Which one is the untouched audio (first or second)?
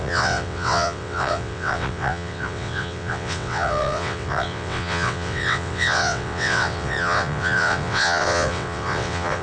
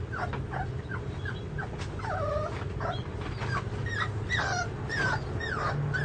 second